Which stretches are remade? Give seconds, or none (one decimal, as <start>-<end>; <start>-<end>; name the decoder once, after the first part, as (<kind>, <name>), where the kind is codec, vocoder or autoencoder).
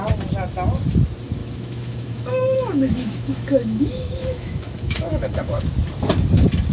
1.4-5.4 (autoencoder, DAC-VAE)